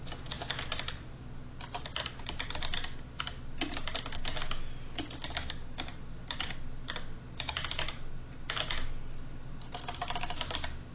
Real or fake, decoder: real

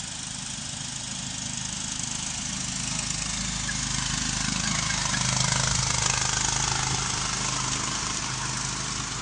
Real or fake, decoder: real